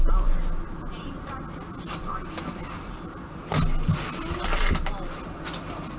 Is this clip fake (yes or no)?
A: no